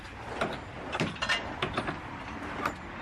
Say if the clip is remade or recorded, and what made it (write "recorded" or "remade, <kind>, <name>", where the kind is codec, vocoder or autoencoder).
recorded